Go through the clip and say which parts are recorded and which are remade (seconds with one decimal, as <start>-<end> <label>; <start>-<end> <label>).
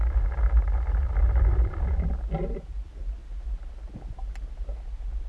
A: 0.0-2.6 recorded; 2.6-3.2 remade; 3.2-5.3 recorded